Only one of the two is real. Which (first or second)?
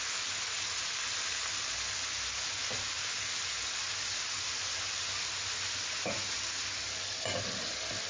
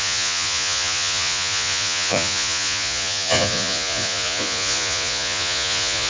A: first